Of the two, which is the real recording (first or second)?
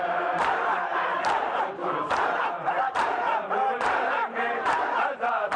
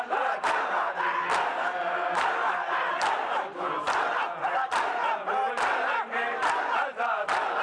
second